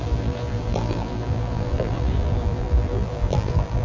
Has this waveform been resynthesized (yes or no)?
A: yes